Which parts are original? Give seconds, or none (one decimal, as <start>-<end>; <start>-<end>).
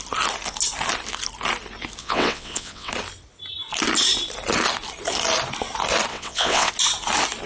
0.0-2.0; 2.9-6.1; 6.7-7.5